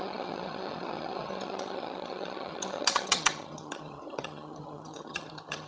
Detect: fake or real fake